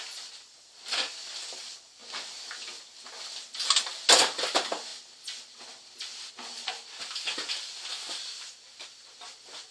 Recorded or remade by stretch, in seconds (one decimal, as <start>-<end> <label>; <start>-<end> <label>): 0.0-9.7 recorded